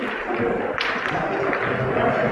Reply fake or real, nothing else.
real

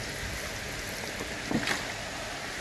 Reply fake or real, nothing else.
real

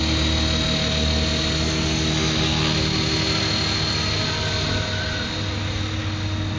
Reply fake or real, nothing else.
real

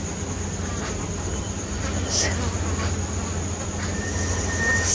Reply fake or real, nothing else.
real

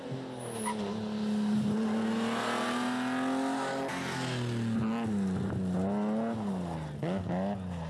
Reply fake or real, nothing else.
real